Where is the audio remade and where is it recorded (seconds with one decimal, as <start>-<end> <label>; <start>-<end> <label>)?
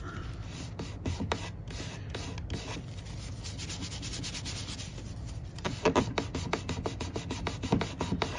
0.0-4.6 recorded; 4.6-6.1 remade; 6.1-8.4 recorded